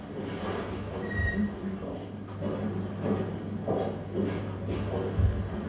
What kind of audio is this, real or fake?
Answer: real